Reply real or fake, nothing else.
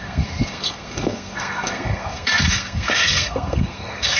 fake